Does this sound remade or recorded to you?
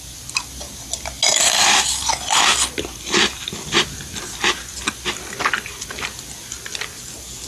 recorded